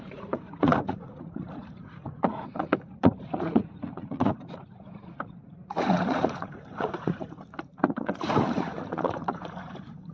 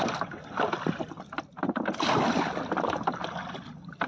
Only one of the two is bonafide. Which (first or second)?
second